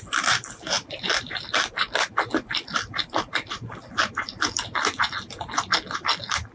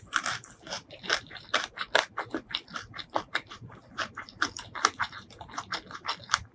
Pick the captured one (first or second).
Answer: first